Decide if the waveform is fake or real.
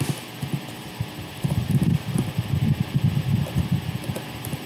real